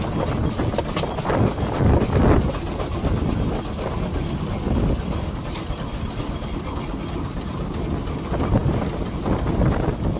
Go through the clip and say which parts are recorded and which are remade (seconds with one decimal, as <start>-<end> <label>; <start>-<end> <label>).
0.0-10.2 recorded

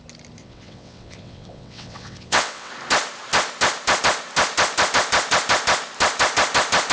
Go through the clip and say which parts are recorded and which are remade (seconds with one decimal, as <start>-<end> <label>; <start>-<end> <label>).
0.0-0.4 recorded; 0.4-2.7 remade; 2.7-6.9 recorded

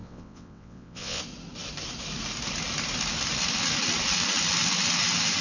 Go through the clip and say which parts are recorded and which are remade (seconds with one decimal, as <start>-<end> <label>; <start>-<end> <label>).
0.0-1.2 remade; 1.2-5.4 recorded

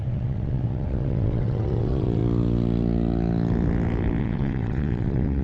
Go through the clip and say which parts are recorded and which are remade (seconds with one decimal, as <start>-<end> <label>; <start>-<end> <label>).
0.0-2.2 remade; 2.2-4.2 recorded; 4.2-5.4 remade

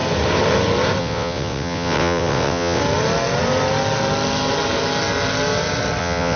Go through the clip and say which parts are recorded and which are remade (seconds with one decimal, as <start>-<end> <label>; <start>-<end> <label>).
0.0-1.0 recorded; 1.0-2.8 remade; 2.8-6.0 recorded; 6.0-6.4 remade

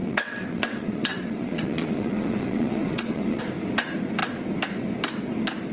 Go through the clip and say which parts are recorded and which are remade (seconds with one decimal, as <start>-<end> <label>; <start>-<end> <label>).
0.0-3.4 remade; 3.4-5.7 recorded